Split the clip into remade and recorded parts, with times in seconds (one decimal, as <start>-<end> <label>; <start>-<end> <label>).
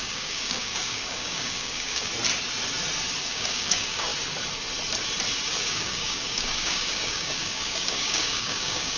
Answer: 0.0-2.1 remade; 2.1-3.2 recorded; 3.2-4.1 remade; 4.1-5.5 recorded; 5.5-9.0 remade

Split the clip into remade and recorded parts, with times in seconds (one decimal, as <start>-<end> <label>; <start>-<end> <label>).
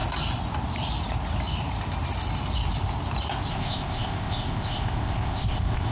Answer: 0.0-3.5 recorded; 3.5-5.9 remade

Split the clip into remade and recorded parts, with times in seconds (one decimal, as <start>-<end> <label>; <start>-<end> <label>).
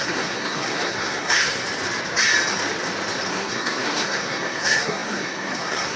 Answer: 0.0-1.6 remade; 1.6-3.3 recorded; 3.3-6.0 remade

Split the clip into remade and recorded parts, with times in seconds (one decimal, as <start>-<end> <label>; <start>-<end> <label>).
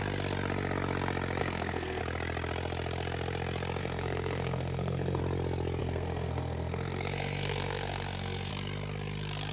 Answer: 0.0-1.4 recorded; 1.4-2.0 remade; 2.0-3.8 recorded; 3.8-5.2 remade; 5.2-5.8 recorded; 5.8-8.5 remade; 8.5-9.5 recorded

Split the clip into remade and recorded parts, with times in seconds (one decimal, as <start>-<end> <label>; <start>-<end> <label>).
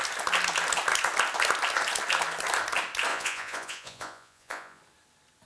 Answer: 0.0-3.1 recorded; 3.1-4.8 remade; 4.8-5.5 recorded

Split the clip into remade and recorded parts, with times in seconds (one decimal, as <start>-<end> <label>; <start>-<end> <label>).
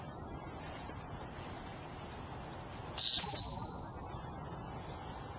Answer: 0.0-5.4 recorded